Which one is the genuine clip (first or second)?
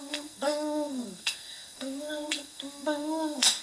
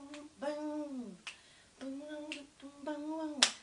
second